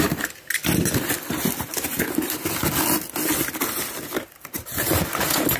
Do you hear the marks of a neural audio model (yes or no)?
no